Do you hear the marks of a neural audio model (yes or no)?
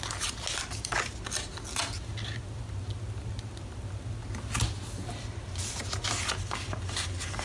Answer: no